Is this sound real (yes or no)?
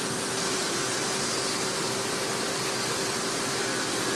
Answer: no